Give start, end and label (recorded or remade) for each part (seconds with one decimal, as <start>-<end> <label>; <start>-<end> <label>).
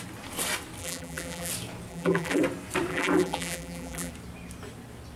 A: 0.0-0.8 recorded; 0.8-1.5 remade; 1.5-1.9 recorded; 1.9-2.4 remade; 2.4-2.9 recorded; 2.9-4.1 remade; 4.1-5.2 recorded